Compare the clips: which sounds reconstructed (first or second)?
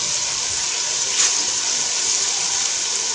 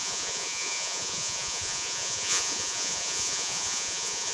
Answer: second